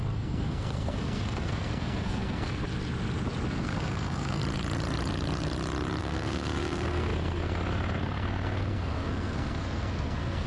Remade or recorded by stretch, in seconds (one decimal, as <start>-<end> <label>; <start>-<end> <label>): 0.0-2.6 remade; 2.6-3.5 recorded; 3.5-4.4 remade; 4.4-6.0 recorded; 6.0-10.5 remade